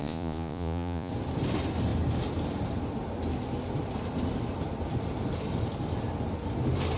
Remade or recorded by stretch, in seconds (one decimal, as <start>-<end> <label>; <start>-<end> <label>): 0.0-1.1 remade; 1.1-7.0 recorded